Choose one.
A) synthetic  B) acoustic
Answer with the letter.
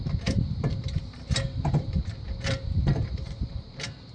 A